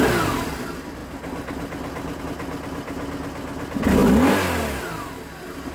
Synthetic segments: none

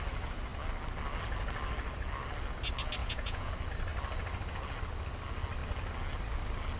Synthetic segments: 3.0-3.5